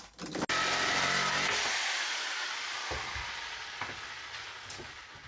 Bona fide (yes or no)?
yes